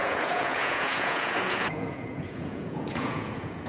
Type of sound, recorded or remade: remade